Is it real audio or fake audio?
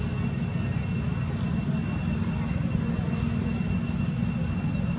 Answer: real